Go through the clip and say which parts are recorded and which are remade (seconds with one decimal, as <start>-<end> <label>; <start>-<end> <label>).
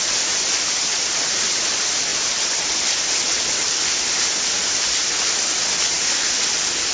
0.0-6.9 recorded